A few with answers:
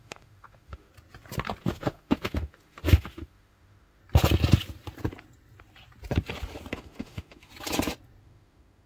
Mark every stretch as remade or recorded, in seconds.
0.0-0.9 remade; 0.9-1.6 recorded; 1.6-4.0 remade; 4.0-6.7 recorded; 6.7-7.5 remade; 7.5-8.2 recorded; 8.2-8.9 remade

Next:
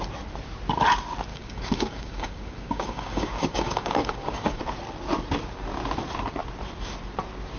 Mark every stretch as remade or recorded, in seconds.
0.0-1.3 recorded; 1.3-4.6 remade; 4.6-7.6 recorded

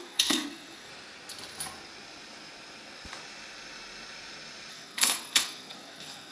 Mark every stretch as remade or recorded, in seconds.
0.0-0.9 remade; 0.9-4.7 recorded; 4.7-6.3 remade

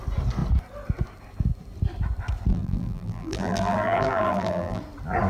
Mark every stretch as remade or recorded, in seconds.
0.0-2.5 recorded; 2.5-4.8 remade; 4.8-5.3 recorded